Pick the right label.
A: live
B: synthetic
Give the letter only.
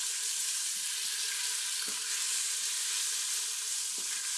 A